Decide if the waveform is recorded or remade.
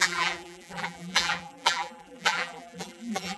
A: remade